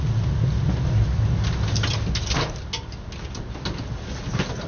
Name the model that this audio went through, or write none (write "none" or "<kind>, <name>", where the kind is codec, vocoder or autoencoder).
none